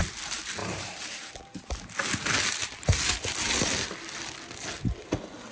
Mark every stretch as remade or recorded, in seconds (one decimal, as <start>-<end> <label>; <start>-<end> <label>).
0.0-0.6 recorded; 0.6-1.3 remade; 1.3-5.5 recorded